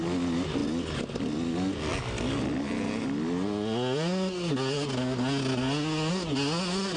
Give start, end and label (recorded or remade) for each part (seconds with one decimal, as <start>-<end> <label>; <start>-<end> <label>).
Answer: 0.0-7.0 recorded